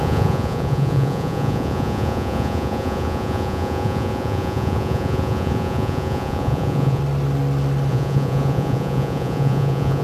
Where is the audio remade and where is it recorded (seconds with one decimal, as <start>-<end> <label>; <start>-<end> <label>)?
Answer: 0.0-7.0 remade; 7.0-7.9 recorded; 7.9-10.0 remade